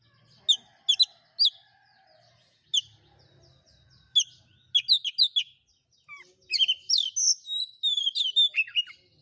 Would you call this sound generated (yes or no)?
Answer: no